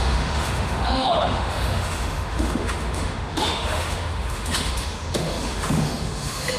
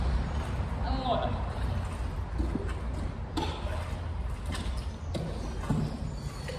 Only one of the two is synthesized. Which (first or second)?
first